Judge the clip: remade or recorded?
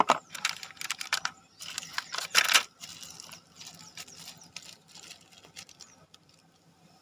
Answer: recorded